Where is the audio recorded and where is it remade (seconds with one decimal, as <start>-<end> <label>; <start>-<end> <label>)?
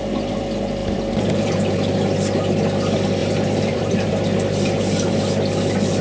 0.0-0.8 recorded; 0.8-1.9 remade; 1.9-3.2 recorded; 3.2-4.1 remade; 4.1-6.0 recorded